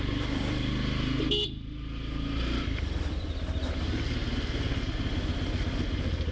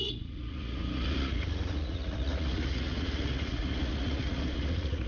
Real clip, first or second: first